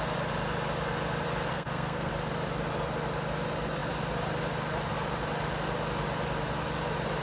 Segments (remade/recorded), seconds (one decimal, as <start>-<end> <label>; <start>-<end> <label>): 0.0-1.5 recorded; 1.5-2.1 remade; 2.1-7.2 recorded